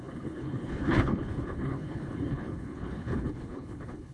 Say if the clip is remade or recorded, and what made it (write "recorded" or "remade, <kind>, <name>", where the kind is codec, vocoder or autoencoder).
remade, codec, HILCodec